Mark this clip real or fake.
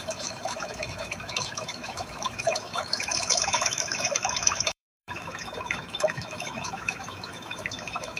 fake